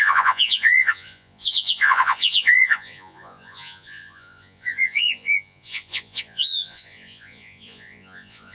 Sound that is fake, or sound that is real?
fake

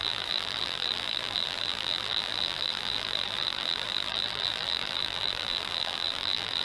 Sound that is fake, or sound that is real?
fake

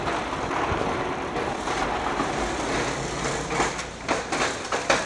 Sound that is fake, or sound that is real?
real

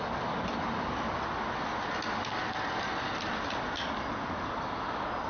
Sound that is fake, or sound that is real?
real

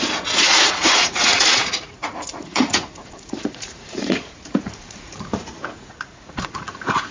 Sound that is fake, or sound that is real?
fake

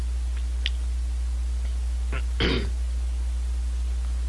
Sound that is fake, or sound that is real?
real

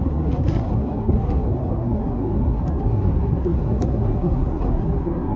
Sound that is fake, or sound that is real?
fake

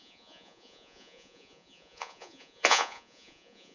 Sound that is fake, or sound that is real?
fake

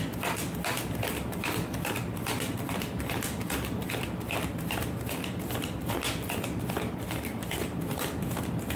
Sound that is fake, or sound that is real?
fake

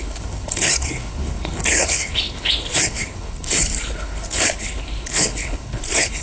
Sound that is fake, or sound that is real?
fake